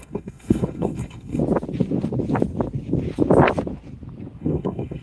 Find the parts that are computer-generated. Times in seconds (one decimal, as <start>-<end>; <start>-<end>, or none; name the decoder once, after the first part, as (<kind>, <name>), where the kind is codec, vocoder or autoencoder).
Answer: 0.0-1.4 (codec, SNAC); 4.4-5.0